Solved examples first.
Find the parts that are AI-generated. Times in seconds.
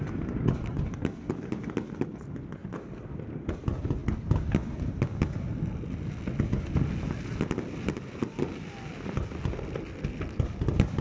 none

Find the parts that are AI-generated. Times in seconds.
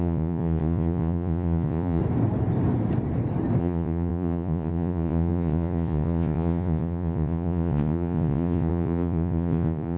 0.0-2.0 (vocoder, Vocos); 3.6-10.0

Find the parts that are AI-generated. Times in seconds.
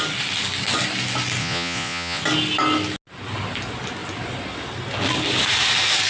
1.4-2.2 (vocoder, Vocos)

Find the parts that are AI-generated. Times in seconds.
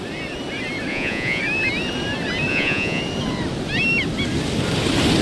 0.9-1.4 (vocoder, Vocos); 2.5-3.0